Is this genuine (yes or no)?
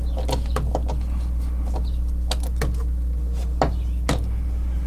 yes